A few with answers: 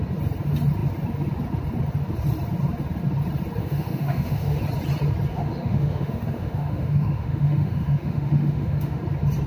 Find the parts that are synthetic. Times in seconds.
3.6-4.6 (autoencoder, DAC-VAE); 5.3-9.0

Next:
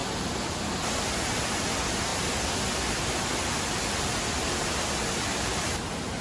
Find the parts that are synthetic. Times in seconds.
none

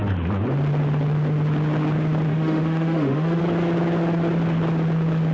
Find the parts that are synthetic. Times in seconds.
2.3-3.4 (autoencoder, DAC-VAE)